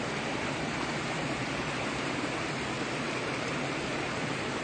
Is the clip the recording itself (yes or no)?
no